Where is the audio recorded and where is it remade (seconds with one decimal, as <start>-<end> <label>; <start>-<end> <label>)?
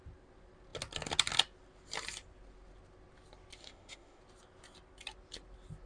0.0-3.6 recorded; 3.6-4.2 remade; 4.2-5.9 recorded